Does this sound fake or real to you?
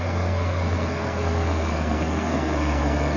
fake